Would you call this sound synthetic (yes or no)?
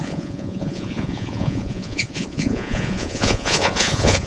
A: yes